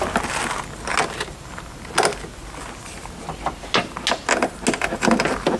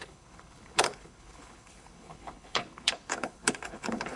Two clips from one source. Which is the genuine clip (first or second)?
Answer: first